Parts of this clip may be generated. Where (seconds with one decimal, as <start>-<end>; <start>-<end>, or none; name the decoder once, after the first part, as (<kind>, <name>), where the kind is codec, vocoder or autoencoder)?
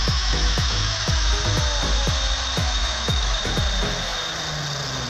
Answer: 0.0-1.3 (autoencoder, DAC-VAE); 2.6-3.4